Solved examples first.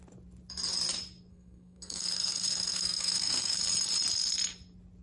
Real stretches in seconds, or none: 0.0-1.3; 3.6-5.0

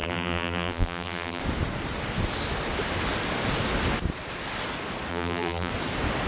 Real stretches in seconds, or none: 1.4-5.1; 5.7-6.3

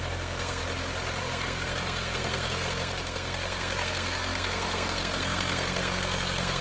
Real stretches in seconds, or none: 0.6-1.2

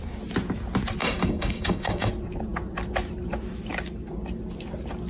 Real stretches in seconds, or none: 0.0-1.0; 2.1-5.1